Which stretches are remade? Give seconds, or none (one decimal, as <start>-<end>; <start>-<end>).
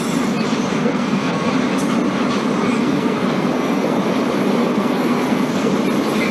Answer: 0.7-1.5; 2.6-4.0; 4.6-5.7